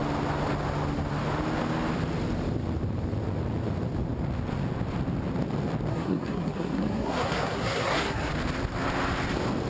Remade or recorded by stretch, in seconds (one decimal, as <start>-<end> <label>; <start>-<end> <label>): 0.0-5.9 recorded; 5.9-8.3 remade; 8.3-9.7 recorded